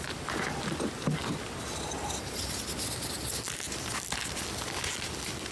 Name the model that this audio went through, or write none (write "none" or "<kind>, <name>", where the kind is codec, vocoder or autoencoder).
none